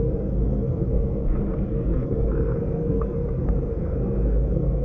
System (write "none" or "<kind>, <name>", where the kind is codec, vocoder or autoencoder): codec, SNAC